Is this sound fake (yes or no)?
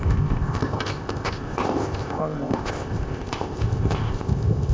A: yes